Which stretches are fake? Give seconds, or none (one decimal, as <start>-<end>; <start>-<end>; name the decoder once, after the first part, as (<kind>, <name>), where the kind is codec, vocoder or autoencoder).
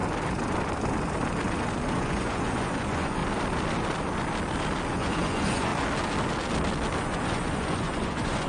1.9-3.2 (vocoder, Vocos); 4.9-5.7; 7.0-8.5